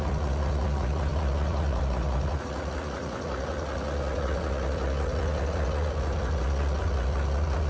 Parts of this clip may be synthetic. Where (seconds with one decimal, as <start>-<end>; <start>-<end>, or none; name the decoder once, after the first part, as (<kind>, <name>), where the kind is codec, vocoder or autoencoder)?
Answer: 0.0-7.7 (vocoder, Vocos)